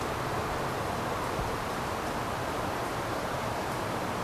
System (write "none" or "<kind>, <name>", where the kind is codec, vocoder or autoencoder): none